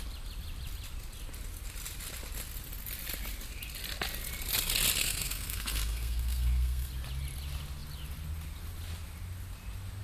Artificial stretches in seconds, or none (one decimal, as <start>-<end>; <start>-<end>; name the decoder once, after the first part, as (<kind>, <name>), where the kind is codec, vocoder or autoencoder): 5.0-6.9 (codec, SNAC)